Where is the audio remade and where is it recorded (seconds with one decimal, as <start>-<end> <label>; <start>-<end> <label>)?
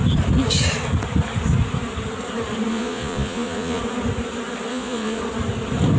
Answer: 0.0-2.7 recorded; 2.7-3.8 remade; 3.8-4.7 recorded; 4.7-5.2 remade; 5.2-6.0 recorded